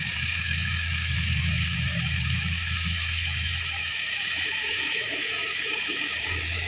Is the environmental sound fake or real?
fake